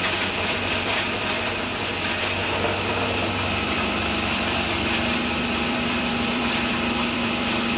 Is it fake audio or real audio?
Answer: fake